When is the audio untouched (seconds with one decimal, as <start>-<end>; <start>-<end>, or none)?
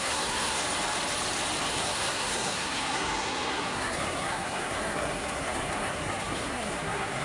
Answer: 0.6-1.7